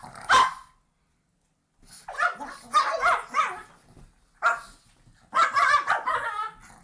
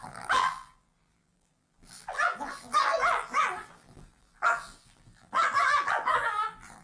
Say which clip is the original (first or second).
first